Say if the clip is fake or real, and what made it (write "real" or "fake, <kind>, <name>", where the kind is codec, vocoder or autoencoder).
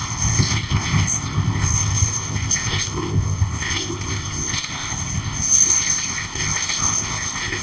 fake, codec, ZipCodec